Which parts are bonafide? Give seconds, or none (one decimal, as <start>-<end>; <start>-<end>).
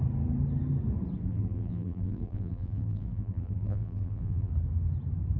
0.0-1.3; 4.5-5.4